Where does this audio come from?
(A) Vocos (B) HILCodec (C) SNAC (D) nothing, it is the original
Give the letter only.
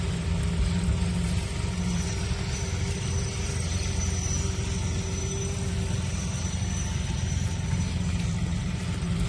D